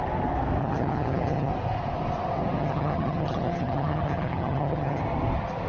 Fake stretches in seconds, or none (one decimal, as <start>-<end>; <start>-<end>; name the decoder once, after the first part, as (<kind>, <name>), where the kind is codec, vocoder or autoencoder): 0.6-1.5 (vocoder, HiFi-GAN); 2.6-5.0